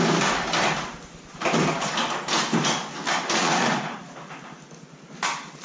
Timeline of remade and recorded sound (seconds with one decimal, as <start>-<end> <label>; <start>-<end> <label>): 0.0-3.4 recorded; 3.4-4.0 remade; 4.0-5.6 recorded